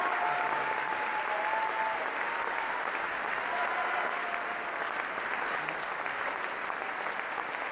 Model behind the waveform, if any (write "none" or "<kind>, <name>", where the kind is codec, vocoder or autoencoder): none